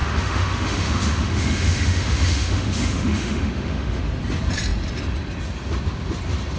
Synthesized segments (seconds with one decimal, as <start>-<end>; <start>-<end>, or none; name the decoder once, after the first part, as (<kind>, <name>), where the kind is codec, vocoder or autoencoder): 0.0-4.0 (autoencoder, DAC-VAE)